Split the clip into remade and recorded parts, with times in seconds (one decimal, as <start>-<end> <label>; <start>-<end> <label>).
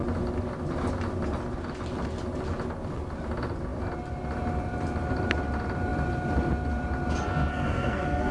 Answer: 0.0-7.5 recorded; 7.5-8.3 remade